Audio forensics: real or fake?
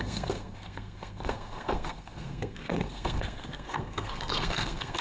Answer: fake